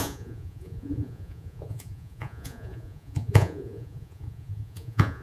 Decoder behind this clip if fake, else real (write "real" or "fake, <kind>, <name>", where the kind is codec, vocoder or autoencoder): fake, vocoder, Vocos